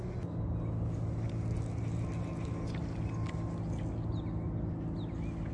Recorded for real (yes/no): yes